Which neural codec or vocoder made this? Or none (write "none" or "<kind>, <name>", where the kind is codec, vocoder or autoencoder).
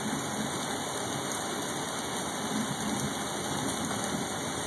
none